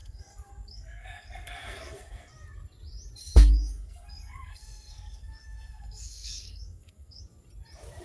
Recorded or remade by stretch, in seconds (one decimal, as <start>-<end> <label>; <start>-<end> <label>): 0.0-2.3 remade; 2.3-3.2 recorded; 3.2-7.2 remade; 7.2-8.0 recorded